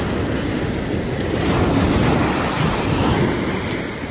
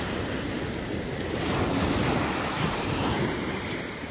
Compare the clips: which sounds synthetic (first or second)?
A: second